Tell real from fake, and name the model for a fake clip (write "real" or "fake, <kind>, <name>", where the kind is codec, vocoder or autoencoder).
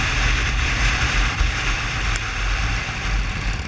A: fake, vocoder, BigVGAN v2